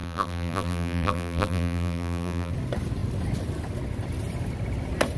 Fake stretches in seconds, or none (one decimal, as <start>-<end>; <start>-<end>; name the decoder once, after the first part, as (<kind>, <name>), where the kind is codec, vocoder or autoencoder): 0.0-2.5 (vocoder, BigVGAN v2)